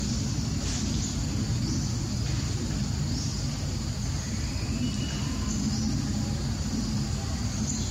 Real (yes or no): yes